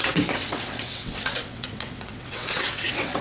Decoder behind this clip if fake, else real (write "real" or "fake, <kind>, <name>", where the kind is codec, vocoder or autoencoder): fake, vocoder, WaveNeXt